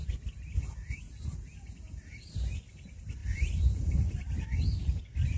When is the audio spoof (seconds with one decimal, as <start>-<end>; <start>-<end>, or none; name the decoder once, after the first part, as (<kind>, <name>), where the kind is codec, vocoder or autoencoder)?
3.2-4.4 (vocoder, BigVGAN v2)

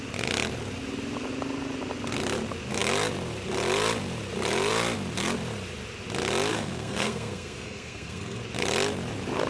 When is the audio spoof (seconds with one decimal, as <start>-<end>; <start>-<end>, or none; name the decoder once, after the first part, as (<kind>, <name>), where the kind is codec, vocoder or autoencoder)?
6.5-8.4 (codec, SNAC)

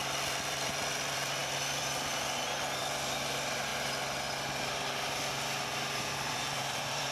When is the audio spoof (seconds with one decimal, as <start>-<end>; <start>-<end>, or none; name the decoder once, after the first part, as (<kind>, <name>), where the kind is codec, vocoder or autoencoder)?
0.0-3.7 (vocoder, BigVGAN v2); 6.0-7.1

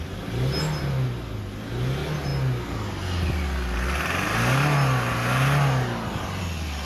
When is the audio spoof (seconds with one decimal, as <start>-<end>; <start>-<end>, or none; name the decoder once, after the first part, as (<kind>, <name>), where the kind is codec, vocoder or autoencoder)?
none

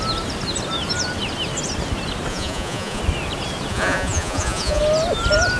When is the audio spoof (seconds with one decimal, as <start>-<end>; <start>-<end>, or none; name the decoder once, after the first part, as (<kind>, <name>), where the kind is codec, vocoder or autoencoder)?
2.3-3.0 (vocoder, Vocos); 3.7-4.8

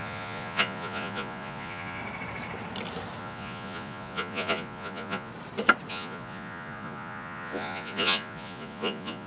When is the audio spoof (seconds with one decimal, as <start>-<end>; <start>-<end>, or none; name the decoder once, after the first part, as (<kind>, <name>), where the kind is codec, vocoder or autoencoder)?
0.0-2.0 (vocoder, Vocos); 3.2-5.3; 5.9-9.3

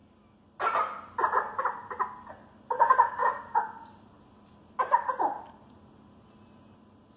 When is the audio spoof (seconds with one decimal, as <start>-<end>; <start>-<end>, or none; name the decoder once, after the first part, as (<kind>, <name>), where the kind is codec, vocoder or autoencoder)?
none

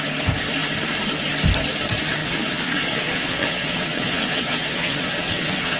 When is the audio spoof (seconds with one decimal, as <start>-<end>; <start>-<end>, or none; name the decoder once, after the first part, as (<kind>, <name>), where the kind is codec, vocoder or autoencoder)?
2.2-5.8 (vocoder, Vocos)